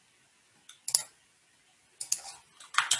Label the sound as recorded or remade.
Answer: recorded